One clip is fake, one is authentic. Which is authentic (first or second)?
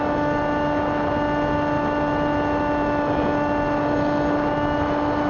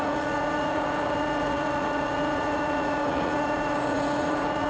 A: first